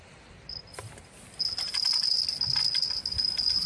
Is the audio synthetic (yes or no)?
no